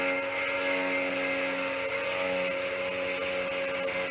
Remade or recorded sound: recorded